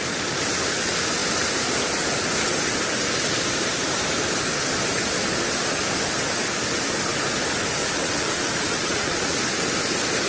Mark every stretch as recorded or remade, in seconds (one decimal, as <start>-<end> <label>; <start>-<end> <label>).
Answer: 0.0-7.8 recorded; 7.8-9.4 remade; 9.4-10.3 recorded

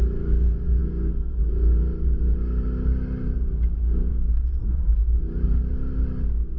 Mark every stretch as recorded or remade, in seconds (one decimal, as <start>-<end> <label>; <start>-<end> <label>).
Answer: 0.0-0.8 recorded; 0.8-1.4 remade; 1.4-4.3 recorded; 4.3-4.9 remade; 4.9-6.6 recorded

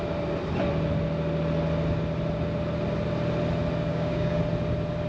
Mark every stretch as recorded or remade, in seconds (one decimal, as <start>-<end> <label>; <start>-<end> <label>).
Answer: 0.0-3.9 recorded; 3.9-4.4 remade; 4.4-5.1 recorded

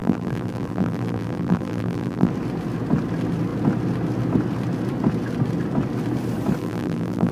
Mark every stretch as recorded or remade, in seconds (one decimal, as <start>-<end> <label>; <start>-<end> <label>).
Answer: 0.0-2.3 remade; 2.3-6.6 recorded; 6.6-7.3 remade

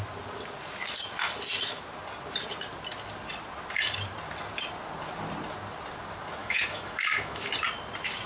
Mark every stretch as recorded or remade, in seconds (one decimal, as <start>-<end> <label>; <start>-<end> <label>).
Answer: 0.0-6.4 recorded; 6.4-7.5 remade; 7.5-8.3 recorded